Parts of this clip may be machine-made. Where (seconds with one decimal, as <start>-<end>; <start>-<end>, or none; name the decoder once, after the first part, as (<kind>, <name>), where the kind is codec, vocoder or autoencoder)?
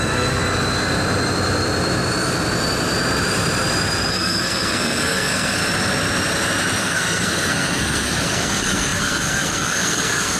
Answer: 0.0-0.4 (codec, SNAC); 4.1-5.6; 6.8-10.4